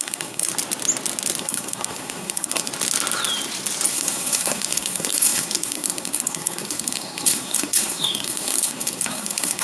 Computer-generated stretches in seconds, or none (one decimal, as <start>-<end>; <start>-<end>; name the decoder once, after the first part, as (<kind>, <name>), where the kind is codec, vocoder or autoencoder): 0.0-0.5 (codec, SNAC); 1.4-2.7; 3.9-9.6